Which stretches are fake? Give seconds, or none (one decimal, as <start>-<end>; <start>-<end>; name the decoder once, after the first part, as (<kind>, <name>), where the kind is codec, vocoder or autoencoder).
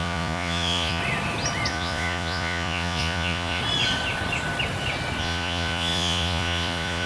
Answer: 0.0-1.0 (vocoder, Vocos); 1.7-3.6; 5.2-7.1